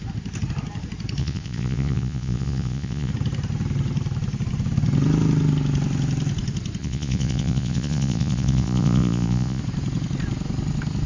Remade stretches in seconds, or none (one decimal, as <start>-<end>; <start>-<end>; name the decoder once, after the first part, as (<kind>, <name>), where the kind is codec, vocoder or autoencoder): 1.2-3.1 (vocoder, Vocos); 6.8-9.6